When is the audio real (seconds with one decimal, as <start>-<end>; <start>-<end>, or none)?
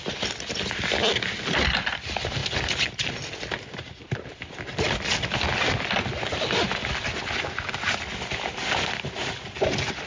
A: 0.0-10.1